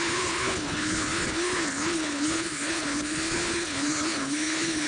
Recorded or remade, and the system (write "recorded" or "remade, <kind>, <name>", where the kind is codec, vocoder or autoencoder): remade, codec, HILCodec